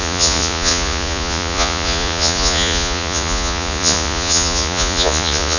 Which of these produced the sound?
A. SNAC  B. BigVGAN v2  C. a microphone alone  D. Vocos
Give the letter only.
D